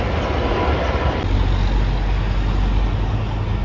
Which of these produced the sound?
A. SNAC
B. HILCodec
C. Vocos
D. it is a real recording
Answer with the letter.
D